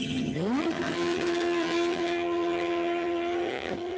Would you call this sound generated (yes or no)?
yes